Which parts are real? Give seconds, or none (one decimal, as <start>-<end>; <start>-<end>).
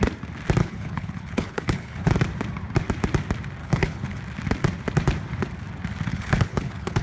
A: 0.0-0.6; 2.1-3.6; 4.2-6.1